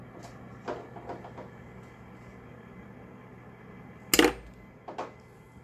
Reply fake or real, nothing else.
real